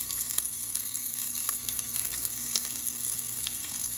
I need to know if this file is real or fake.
fake